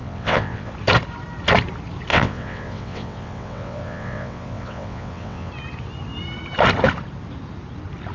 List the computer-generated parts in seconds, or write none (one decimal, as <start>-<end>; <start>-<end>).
0.0-0.7; 2.1-5.5